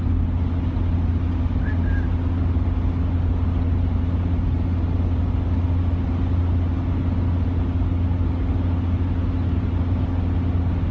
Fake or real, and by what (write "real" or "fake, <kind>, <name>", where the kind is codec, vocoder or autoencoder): real